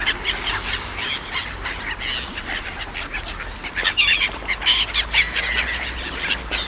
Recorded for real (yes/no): yes